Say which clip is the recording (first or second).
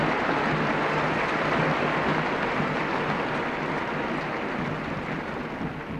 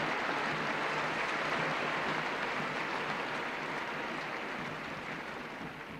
first